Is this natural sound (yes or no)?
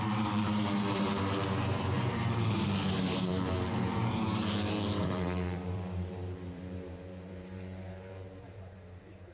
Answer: no